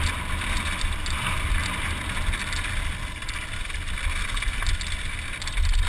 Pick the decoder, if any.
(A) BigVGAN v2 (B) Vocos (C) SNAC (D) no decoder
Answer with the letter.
D